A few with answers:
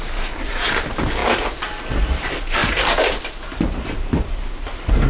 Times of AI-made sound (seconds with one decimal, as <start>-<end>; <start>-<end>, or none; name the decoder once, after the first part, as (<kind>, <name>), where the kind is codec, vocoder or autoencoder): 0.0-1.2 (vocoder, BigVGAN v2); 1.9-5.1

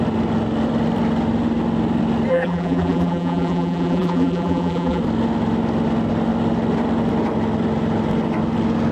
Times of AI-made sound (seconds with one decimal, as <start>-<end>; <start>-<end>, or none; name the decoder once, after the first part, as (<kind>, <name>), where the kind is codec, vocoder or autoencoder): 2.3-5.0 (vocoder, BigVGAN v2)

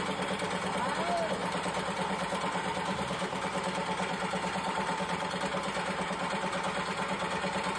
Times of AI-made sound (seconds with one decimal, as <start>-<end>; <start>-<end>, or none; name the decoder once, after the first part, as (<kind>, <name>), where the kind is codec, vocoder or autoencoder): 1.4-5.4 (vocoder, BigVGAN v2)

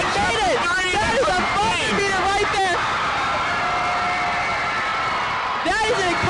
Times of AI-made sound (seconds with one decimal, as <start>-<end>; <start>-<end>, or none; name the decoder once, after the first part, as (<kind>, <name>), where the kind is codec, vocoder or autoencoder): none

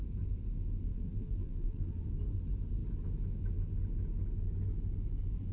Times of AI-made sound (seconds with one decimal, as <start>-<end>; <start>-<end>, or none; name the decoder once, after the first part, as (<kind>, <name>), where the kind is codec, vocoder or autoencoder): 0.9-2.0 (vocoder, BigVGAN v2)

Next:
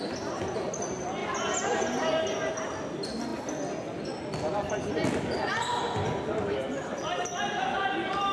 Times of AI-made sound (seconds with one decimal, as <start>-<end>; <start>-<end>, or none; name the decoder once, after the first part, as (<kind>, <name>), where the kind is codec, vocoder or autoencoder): 1.2-2.1 (vocoder, BigVGAN v2)